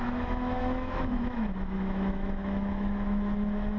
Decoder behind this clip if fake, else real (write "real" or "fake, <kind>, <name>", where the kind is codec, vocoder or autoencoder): fake, autoencoder, DAC-VAE